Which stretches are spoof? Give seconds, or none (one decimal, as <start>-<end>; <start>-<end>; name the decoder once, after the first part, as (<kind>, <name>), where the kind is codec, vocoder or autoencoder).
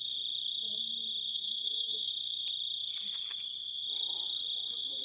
1.3-2.1 (codec, SNAC)